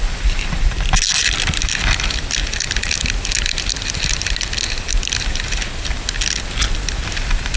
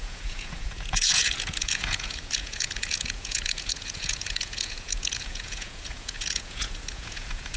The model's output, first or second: second